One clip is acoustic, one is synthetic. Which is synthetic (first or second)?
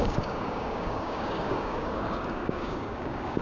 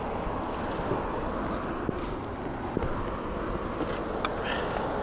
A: first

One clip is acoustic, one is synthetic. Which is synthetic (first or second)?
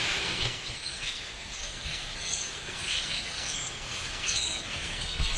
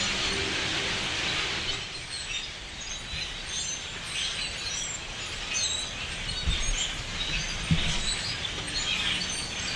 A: first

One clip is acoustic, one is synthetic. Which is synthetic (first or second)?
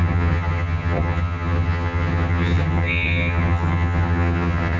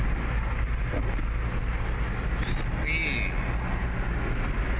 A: first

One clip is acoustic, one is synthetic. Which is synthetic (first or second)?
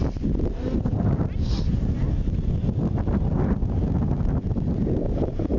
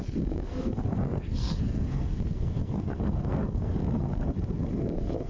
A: second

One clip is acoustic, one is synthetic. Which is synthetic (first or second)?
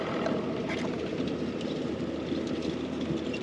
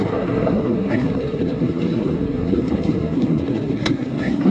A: second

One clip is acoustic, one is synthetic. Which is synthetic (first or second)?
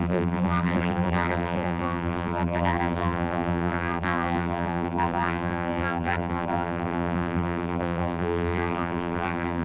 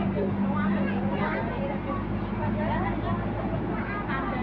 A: first